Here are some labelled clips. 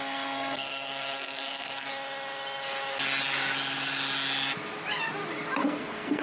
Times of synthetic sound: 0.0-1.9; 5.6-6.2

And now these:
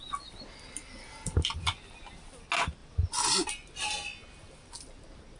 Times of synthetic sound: none